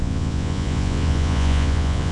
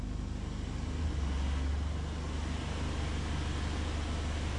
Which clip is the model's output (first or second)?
first